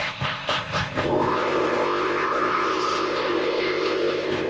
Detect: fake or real fake